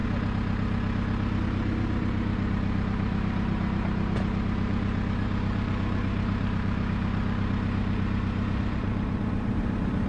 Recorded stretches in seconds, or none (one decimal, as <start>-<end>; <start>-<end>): 0.0-1.4